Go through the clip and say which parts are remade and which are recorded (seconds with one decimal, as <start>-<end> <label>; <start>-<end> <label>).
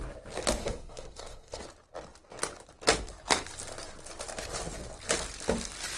0.0-0.6 recorded; 0.6-1.6 remade; 1.6-6.0 recorded